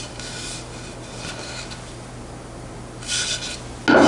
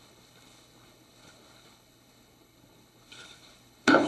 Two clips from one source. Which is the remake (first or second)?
second